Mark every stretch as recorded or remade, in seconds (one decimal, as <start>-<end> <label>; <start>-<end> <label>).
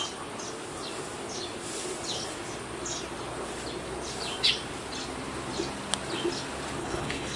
0.0-6.8 recorded; 6.8-7.4 remade